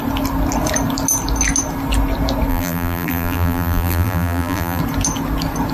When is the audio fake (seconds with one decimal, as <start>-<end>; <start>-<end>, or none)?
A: 2.5-4.8

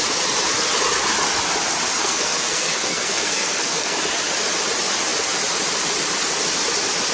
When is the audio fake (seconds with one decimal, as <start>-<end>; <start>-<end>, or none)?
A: 2.0-4.0

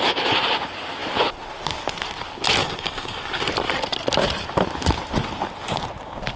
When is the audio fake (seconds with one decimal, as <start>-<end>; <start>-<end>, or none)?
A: 2.6-3.4

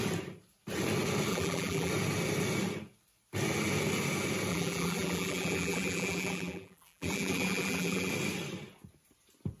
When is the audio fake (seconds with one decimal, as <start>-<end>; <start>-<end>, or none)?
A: 1.3-1.9; 4.5-8.1